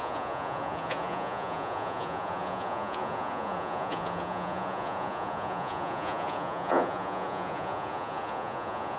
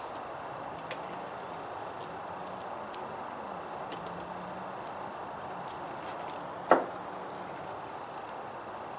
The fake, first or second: first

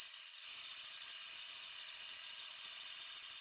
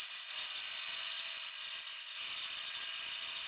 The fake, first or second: first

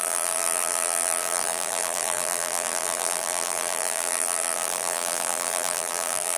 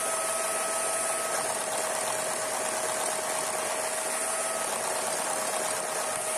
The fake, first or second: first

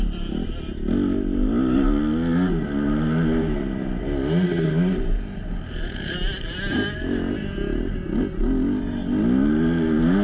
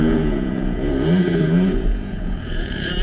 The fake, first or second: second